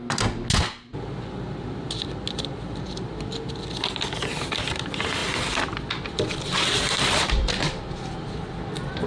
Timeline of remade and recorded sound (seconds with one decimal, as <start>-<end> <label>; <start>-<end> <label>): 0.0-5.2 recorded; 5.2-8.3 remade; 8.3-9.1 recorded

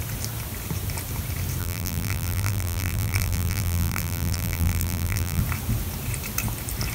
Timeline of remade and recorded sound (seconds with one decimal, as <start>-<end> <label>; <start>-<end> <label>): 0.0-1.6 recorded; 1.6-5.4 remade; 5.4-6.9 recorded

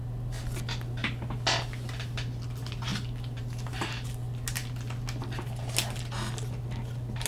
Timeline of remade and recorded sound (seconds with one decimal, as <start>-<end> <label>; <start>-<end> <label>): 0.0-7.3 recorded

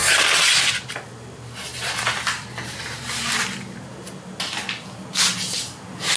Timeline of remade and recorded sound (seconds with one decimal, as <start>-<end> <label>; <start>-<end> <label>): 0.0-0.7 recorded; 0.7-3.9 remade; 3.9-6.2 recorded

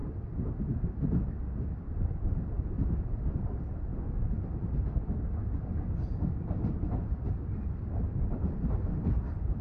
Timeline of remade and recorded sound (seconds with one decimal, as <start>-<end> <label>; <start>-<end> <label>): 0.0-2.2 recorded; 2.2-3.9 remade; 3.9-5.1 recorded; 5.1-9.6 remade

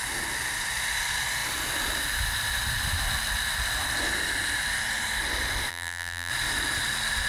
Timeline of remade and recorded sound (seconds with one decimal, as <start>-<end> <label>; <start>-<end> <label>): 0.0-5.7 recorded; 5.7-6.3 remade; 6.3-7.3 recorded

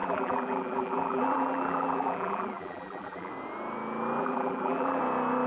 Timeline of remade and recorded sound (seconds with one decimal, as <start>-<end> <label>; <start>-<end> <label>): 0.0-3.3 remade; 3.3-4.2 recorded; 4.2-5.0 remade; 5.0-5.5 recorded

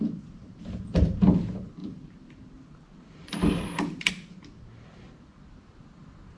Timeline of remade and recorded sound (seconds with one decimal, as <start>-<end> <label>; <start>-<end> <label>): 0.0-1.8 recorded; 1.8-4.1 remade; 4.1-6.4 recorded